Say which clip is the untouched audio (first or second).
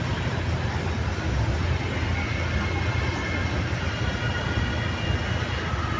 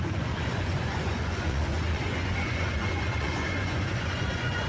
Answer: first